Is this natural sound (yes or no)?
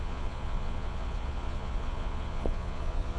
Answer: no